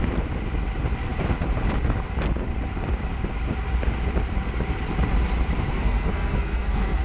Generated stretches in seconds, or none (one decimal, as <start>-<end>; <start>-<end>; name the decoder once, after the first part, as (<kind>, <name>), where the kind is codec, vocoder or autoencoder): 5.7-7.0 (codec, SNAC)